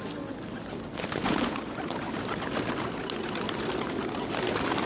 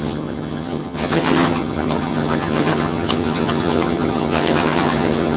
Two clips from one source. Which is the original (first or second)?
first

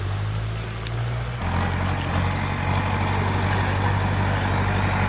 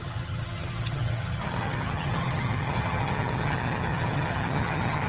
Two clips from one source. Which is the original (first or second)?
first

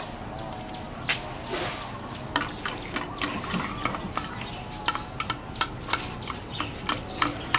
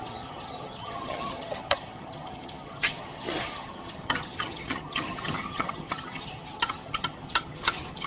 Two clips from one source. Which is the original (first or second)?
first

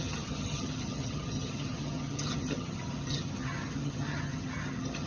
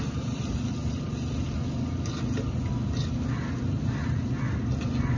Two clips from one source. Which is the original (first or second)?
second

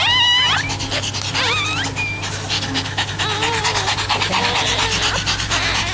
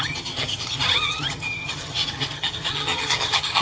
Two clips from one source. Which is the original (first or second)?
first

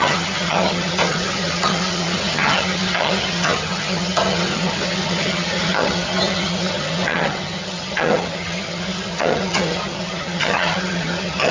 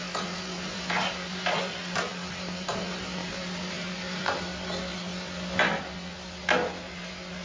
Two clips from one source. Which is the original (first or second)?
second